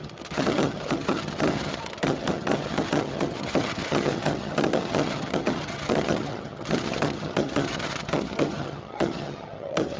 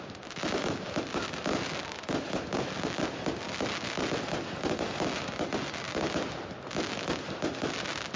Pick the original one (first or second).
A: second